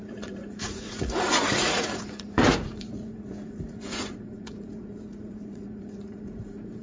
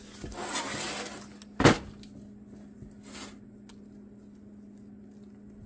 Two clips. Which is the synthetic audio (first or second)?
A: first